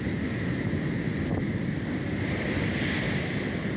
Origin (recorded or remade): recorded